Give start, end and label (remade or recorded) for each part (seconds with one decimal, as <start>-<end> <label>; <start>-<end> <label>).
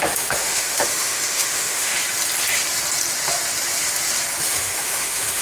0.0-1.9 remade; 1.9-4.4 recorded; 4.4-5.4 remade